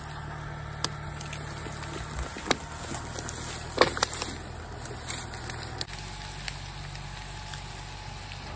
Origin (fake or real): real